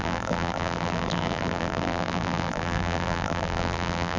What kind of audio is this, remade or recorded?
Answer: remade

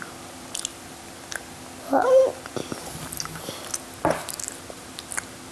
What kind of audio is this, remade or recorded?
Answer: recorded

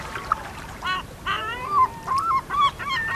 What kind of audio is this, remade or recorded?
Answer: remade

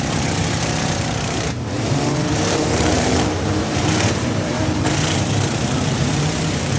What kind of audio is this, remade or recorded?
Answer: remade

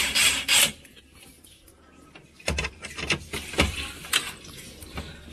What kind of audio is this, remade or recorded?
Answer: recorded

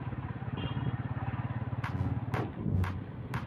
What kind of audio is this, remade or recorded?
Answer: recorded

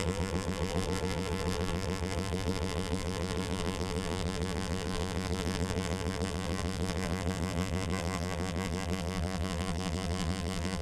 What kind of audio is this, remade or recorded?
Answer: remade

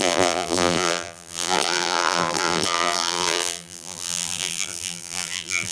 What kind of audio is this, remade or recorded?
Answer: remade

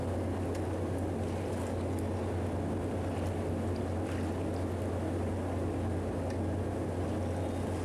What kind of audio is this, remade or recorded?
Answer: recorded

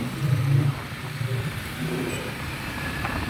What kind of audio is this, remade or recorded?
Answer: remade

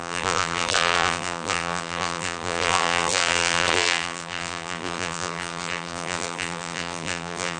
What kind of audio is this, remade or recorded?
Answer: remade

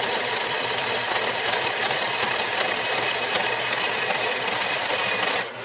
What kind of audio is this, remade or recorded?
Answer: remade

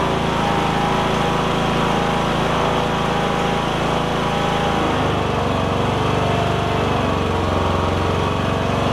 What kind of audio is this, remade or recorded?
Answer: recorded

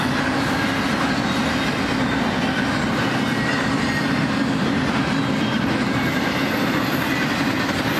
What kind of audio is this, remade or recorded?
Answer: recorded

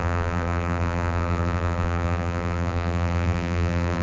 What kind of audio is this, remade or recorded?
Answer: remade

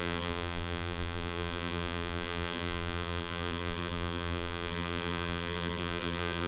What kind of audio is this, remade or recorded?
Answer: remade